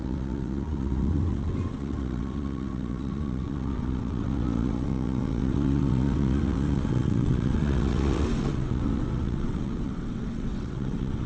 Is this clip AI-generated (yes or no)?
yes